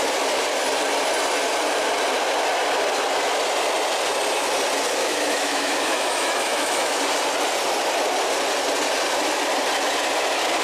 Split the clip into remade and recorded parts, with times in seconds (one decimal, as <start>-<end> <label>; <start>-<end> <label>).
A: 0.0-5.0 recorded; 5.0-7.0 remade; 7.0-10.6 recorded